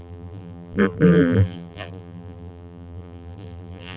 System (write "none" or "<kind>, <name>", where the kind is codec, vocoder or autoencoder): vocoder, BigVGAN v2